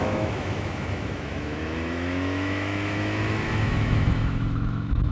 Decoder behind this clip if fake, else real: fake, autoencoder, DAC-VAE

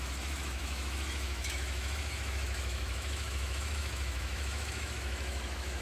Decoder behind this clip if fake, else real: fake, autoencoder, DAC-VAE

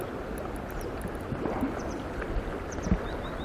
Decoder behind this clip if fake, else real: real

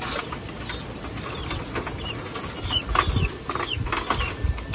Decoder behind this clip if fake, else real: real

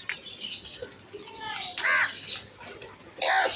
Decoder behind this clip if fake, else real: real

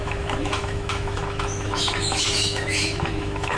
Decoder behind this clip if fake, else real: fake, autoencoder, DAC-VAE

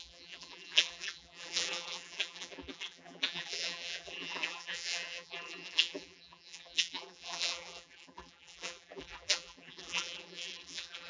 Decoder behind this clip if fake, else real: fake, vocoder, BigVGAN v2